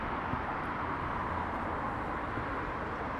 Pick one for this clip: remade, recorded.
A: recorded